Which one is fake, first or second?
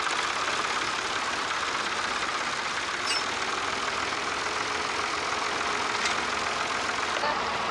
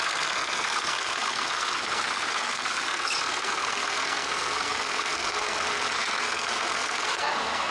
second